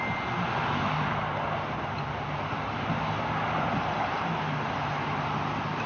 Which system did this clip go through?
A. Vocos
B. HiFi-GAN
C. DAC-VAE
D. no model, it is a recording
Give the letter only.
D